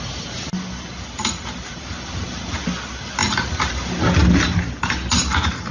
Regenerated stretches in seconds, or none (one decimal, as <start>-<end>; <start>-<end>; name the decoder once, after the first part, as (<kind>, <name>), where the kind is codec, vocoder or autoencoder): none